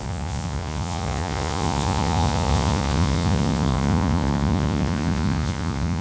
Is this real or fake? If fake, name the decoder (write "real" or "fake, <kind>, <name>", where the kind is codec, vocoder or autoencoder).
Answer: fake, vocoder, Vocos